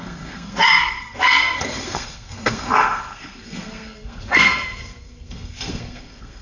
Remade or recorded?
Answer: remade